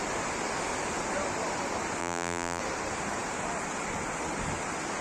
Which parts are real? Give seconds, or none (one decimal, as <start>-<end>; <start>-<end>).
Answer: 0.0-2.0; 2.6-5.0